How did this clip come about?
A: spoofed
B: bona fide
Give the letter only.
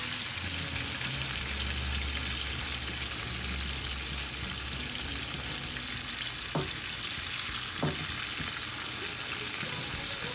B